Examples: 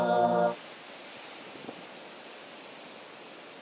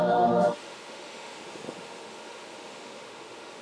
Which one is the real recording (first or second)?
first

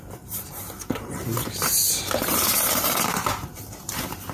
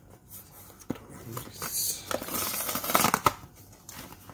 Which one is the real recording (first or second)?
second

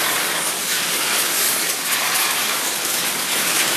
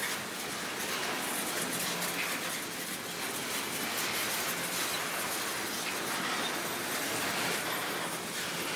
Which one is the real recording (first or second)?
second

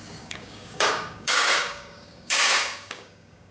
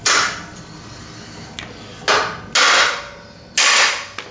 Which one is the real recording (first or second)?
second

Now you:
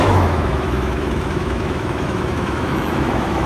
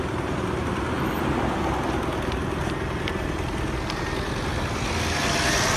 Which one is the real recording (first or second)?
second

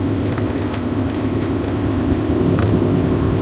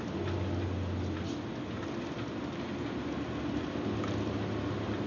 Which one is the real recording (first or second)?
second